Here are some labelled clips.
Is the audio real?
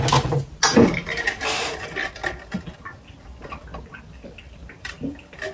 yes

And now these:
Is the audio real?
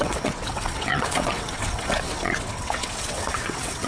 no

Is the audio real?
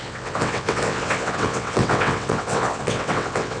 no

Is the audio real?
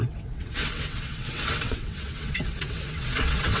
no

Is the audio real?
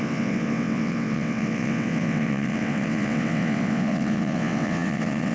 no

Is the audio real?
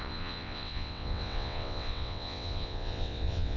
no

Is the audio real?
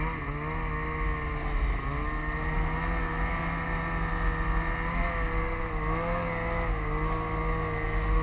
yes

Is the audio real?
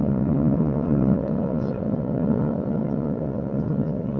no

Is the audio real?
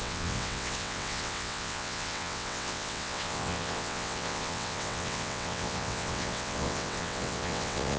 no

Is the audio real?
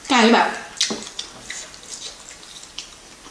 yes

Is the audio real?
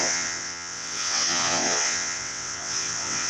no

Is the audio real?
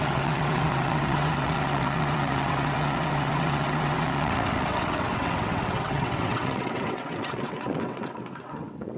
no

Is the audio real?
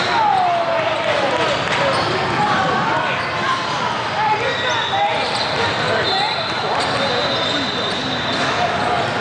yes